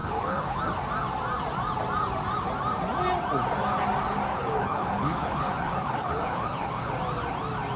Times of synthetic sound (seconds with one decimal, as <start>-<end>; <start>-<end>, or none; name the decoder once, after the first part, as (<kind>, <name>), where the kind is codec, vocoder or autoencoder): 0.0-0.6 (codec, HILCodec); 4.3-6.9